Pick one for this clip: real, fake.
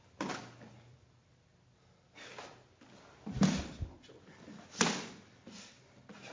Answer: real